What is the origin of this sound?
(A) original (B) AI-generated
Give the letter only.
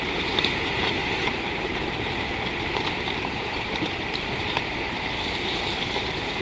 B